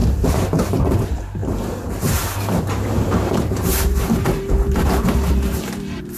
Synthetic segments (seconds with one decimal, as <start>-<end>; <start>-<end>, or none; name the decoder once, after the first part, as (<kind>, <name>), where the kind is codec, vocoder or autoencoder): 0.0-6.2 (vocoder, BigVGAN v2)